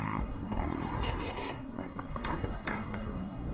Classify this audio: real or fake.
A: fake